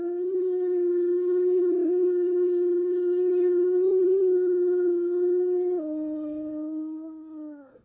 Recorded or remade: remade